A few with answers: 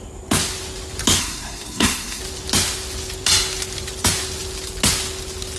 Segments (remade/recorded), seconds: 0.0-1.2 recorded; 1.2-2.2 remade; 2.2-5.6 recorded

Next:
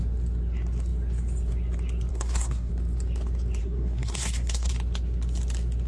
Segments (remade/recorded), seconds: 0.0-2.1 recorded; 2.1-2.7 remade; 2.7-3.6 recorded; 3.6-4.7 remade; 4.7-5.9 recorded